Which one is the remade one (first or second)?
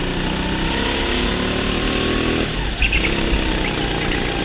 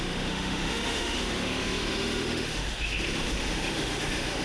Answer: second